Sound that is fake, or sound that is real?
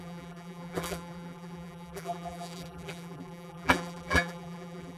fake